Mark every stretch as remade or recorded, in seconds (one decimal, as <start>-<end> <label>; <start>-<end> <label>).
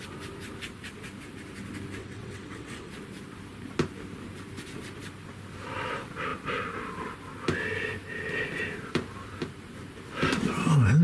0.0-2.0 recorded; 2.0-2.9 remade; 2.9-11.0 recorded